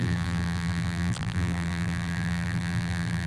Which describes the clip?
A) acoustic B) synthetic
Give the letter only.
B